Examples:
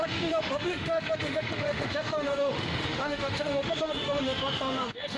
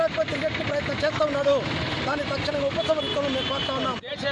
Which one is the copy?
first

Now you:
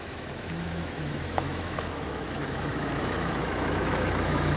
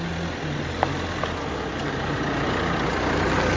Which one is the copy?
first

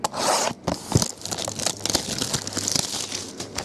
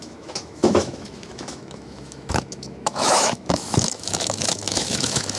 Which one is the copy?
second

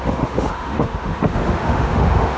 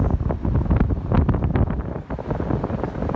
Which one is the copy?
first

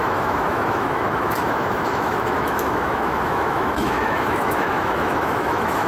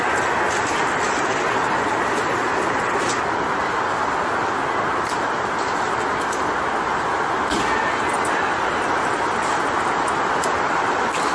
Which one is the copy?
first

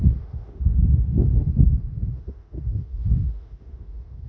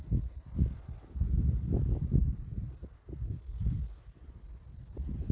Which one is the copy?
first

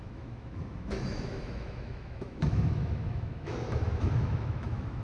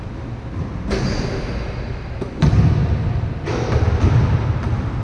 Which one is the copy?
first